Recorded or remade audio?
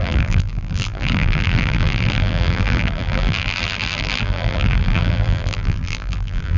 remade